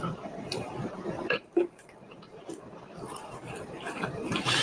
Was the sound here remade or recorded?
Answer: remade